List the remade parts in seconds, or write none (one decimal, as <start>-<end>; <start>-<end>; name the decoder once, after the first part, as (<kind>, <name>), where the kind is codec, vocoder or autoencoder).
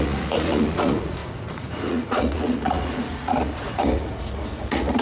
0.0-5.0 (vocoder, Vocos)